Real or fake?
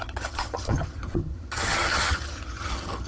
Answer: fake